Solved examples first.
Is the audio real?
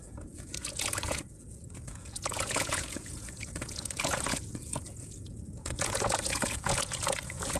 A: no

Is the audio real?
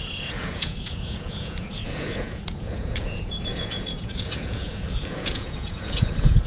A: no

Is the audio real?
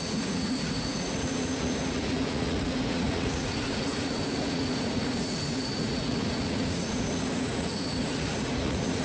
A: no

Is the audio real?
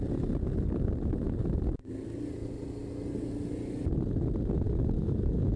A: yes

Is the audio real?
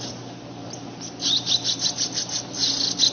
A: yes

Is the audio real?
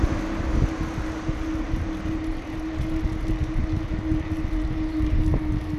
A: yes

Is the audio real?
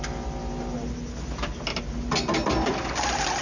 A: yes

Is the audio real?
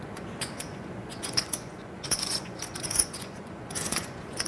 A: no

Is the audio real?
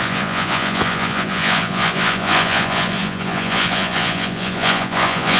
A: no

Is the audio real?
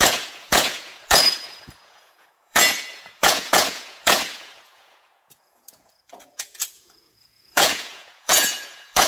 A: no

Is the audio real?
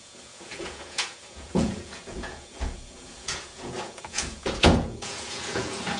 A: no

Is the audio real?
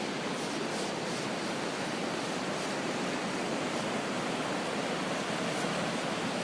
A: yes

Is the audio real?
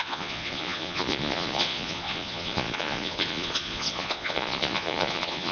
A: no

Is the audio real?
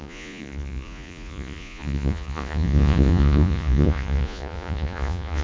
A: no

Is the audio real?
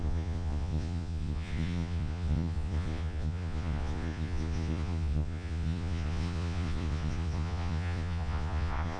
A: no